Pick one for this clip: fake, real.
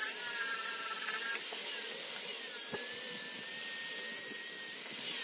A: real